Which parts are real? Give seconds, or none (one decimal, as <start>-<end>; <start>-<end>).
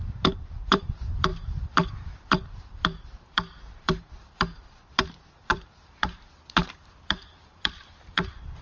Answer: none